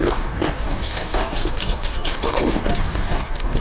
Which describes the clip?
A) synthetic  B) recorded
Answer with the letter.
A